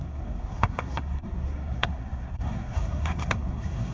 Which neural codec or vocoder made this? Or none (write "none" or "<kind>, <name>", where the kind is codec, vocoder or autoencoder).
codec, SNAC